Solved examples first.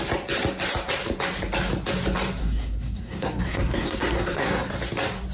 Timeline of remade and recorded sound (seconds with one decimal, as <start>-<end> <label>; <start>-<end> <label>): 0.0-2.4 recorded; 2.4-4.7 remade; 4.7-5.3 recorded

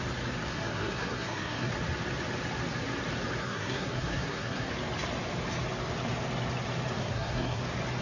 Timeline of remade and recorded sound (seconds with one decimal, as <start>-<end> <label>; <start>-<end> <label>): 0.0-0.5 recorded; 0.5-1.7 remade; 1.7-3.4 recorded; 3.4-4.7 remade; 4.7-7.0 recorded; 7.0-7.6 remade; 7.6-8.0 recorded

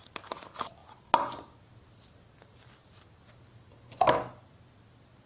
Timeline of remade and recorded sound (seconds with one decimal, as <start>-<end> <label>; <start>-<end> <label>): 0.0-5.3 recorded